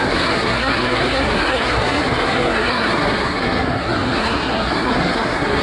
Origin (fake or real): fake